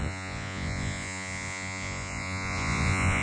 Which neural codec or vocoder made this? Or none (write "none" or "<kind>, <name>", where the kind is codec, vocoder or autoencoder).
vocoder, Vocos